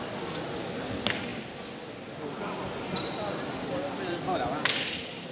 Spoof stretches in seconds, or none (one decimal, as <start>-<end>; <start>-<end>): none